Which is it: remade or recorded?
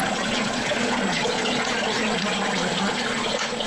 remade